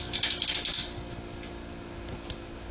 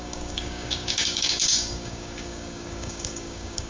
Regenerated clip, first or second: second